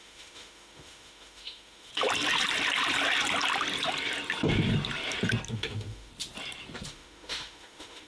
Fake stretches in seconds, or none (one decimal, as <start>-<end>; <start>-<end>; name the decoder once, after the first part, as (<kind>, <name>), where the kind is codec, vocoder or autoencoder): 0.0-1.9 (autoencoder, DAC-VAE); 5.5-6.1; 6.9-8.1